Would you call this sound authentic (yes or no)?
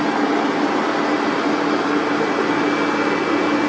yes